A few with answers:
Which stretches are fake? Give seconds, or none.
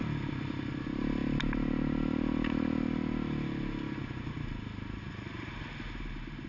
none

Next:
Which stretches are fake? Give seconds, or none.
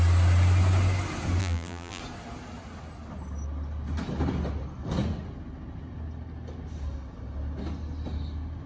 1.4-2.0 (vocoder, BigVGAN v2)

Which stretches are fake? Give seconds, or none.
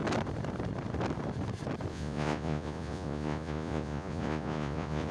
1.9-5.1 (vocoder, Vocos)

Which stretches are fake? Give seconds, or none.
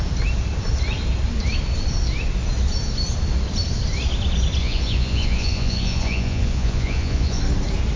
4.6-7.4 (vocoder, Vocos)